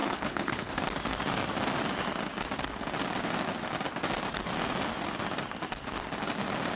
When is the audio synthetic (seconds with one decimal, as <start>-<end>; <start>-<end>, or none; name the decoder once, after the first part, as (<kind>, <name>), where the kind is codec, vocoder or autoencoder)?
0.0-0.7 (codec, HILCodec)